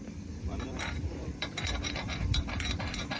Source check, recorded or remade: remade